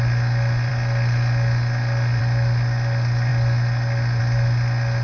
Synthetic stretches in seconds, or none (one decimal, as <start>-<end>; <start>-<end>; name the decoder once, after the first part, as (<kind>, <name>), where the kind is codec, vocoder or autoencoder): none